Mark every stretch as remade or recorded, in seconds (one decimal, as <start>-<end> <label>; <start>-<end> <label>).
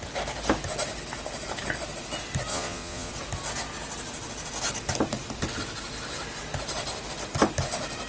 0.0-2.5 recorded; 2.5-3.1 remade; 3.1-8.1 recorded